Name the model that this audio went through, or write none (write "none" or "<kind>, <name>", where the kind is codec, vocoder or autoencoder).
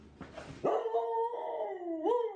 none